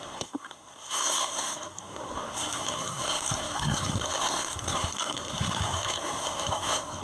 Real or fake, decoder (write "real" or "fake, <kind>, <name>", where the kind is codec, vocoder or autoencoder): fake, codec, SNAC